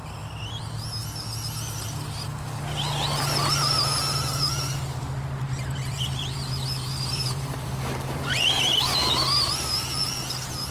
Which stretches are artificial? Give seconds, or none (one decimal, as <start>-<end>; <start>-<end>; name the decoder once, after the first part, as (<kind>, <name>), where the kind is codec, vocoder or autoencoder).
5.4-8.6 (vocoder, BigVGAN v2)